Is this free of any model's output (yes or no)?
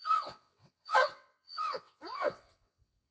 no